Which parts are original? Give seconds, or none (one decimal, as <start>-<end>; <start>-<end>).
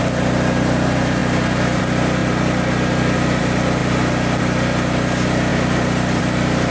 0.0-6.7